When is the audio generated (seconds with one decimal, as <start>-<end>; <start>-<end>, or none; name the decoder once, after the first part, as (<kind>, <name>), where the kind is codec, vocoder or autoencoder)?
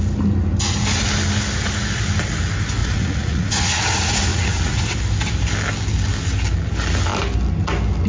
2.8-3.8 (vocoder, Vocos); 4.3-4.8